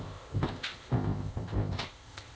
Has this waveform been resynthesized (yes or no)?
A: yes